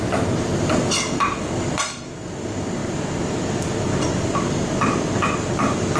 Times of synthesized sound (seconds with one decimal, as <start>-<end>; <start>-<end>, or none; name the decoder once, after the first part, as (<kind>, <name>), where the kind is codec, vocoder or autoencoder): 0.0-0.5 (vocoder, BigVGAN v2); 1.2-6.0